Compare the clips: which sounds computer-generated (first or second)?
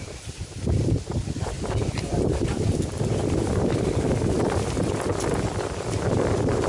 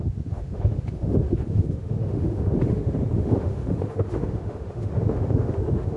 second